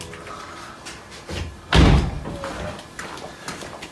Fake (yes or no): no